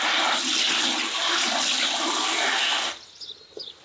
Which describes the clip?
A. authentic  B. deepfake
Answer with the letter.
A